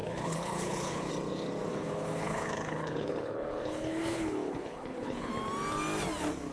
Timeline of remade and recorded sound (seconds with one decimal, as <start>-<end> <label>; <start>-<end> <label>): 0.0-1.1 remade; 1.1-1.7 recorded; 1.7-5.3 remade; 5.3-6.5 recorded